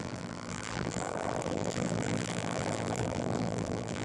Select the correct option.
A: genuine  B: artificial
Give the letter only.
B